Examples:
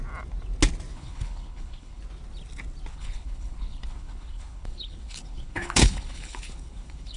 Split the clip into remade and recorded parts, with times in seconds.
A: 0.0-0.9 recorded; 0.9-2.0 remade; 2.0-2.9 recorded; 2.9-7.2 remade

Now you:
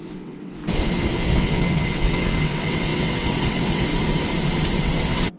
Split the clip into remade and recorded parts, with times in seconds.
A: 0.0-0.6 remade; 0.6-1.1 recorded; 1.1-3.9 remade; 3.9-4.8 recorded; 4.8-5.4 remade

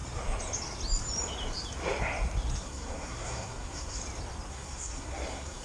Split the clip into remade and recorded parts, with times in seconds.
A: 0.0-2.6 recorded; 2.6-4.0 remade; 4.0-4.5 recorded; 4.5-5.6 remade

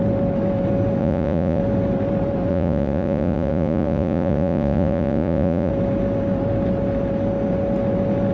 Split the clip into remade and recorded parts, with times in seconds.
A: 0.0-1.0 recorded; 1.0-1.6 remade; 1.6-2.5 recorded; 2.5-5.7 remade; 5.7-8.3 recorded

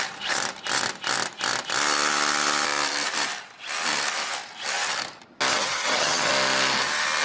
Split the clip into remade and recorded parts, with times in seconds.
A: 0.0-5.5 recorded; 5.5-6.3 remade; 6.3-7.2 recorded

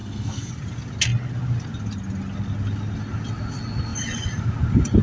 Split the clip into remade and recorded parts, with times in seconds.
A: 0.0-0.5 remade; 0.5-5.0 recorded